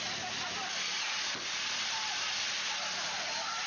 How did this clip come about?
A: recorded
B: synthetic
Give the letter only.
A